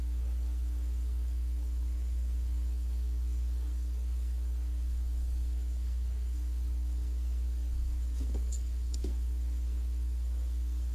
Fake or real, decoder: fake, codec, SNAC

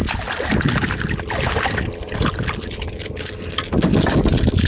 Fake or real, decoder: real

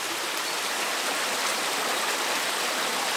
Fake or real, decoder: real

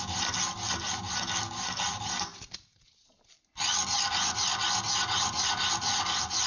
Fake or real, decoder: real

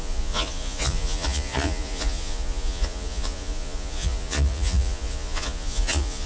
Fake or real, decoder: fake, vocoder, Vocos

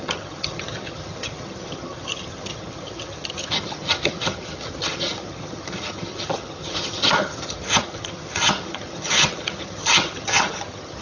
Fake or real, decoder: fake, vocoder, HiFi-GAN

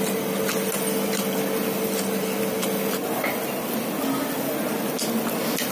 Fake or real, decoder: real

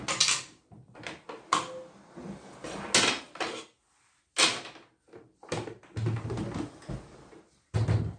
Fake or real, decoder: real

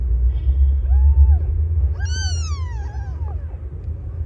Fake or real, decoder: real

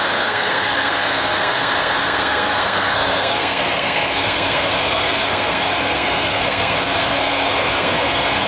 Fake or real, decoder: fake, codec, SNAC